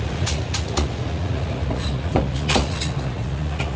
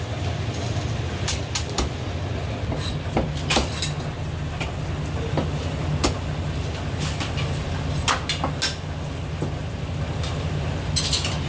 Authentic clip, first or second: second